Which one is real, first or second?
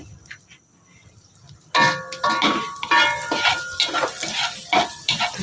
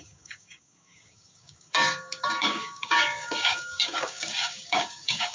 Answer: first